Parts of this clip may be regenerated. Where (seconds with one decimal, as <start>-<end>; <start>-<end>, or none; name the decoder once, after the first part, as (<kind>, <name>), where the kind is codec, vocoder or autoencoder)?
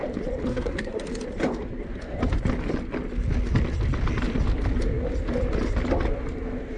0.5-1.0 (codec, SNAC)